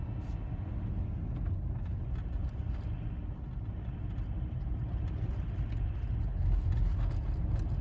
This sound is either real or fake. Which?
real